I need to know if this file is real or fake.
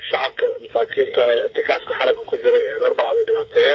fake